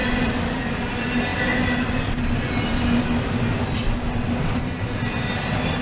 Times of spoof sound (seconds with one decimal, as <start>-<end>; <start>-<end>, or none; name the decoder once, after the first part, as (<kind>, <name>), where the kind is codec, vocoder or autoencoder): none